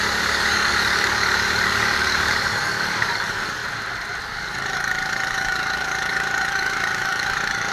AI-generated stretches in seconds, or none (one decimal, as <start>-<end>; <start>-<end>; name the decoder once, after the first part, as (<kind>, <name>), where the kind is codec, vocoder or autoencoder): 0.0-3.6 (codec, DAC); 4.2-7.7